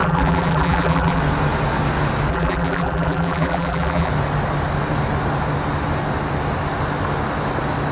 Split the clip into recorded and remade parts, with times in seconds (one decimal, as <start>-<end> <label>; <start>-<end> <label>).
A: 0.0-1.2 remade; 1.2-2.3 recorded; 2.3-4.1 remade; 4.1-7.9 recorded